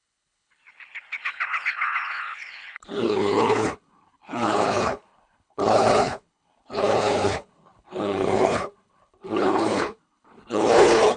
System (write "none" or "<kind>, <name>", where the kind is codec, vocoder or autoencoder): codec, HILCodec